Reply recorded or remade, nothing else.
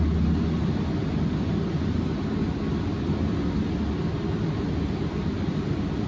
recorded